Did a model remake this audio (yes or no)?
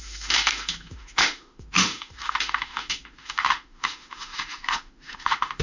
yes